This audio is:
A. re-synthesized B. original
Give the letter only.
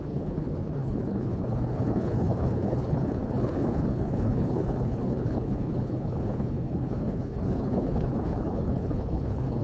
A